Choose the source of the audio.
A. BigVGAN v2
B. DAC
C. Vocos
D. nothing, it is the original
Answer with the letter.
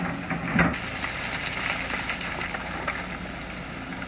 D